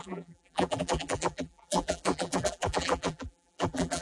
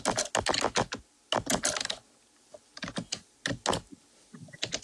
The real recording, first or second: second